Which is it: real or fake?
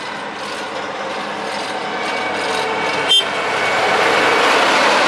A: real